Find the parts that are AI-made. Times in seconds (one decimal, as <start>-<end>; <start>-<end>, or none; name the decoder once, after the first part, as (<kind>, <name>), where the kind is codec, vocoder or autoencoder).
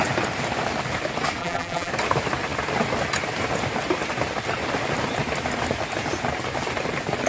1.4-1.9 (vocoder, BigVGAN v2)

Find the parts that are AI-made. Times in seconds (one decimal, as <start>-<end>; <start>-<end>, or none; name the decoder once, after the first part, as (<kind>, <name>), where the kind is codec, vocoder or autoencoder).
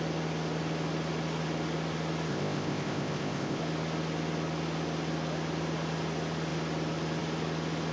2.3-3.6 (codec, ZipCodec)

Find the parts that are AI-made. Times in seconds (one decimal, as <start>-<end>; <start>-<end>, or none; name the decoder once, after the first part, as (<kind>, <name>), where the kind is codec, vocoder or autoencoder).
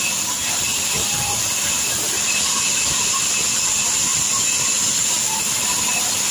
none